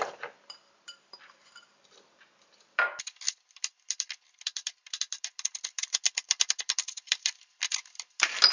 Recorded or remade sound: remade